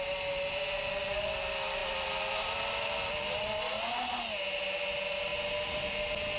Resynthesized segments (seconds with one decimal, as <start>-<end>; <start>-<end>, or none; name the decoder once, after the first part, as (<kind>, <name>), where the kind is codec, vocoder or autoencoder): none